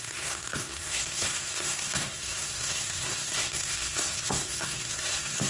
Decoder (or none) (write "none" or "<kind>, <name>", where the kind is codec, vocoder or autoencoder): codec, SNAC